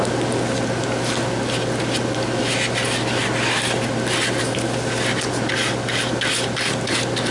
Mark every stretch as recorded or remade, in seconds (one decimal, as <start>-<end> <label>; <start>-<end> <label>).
0.0-7.3 recorded